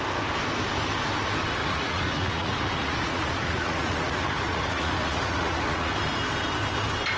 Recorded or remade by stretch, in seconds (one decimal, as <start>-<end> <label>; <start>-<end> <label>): 0.0-1.6 recorded; 1.6-5.9 remade; 5.9-7.2 recorded